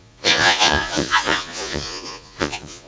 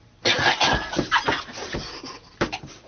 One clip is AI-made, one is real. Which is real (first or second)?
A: second